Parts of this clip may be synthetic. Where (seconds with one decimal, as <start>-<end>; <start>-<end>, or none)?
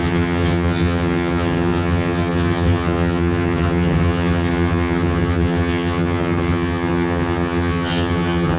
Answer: 0.0-8.6